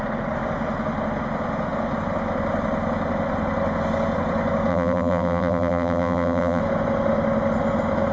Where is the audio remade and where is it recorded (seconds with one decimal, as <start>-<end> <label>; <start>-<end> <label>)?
0.0-4.7 recorded; 4.7-6.6 remade; 6.6-8.1 recorded